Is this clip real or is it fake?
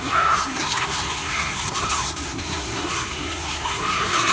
fake